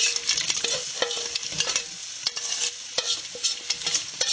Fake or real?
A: real